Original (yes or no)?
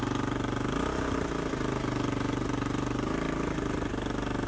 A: yes